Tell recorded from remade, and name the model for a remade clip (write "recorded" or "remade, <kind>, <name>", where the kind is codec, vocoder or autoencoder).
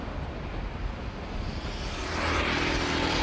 recorded